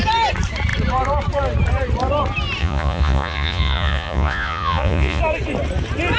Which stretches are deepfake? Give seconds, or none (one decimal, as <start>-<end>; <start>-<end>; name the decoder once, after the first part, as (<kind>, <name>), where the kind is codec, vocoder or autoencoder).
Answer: 2.6-5.2 (vocoder, Vocos)